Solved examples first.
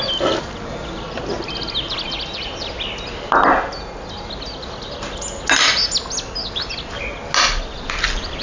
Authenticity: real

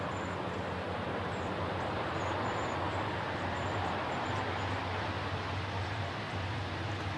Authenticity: real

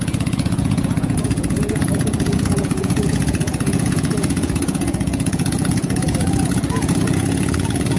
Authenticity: fake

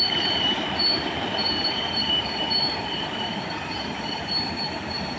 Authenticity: fake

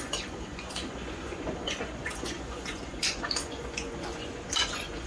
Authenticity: fake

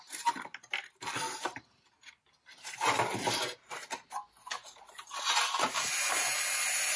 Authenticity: real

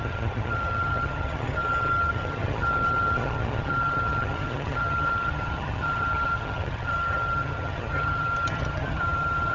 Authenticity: fake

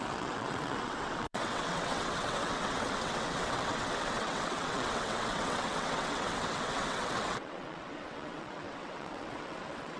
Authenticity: fake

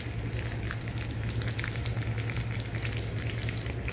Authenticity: real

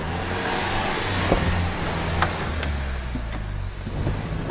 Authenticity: real